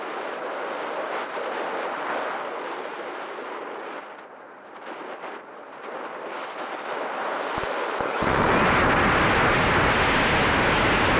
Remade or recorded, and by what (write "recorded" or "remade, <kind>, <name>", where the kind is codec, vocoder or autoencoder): recorded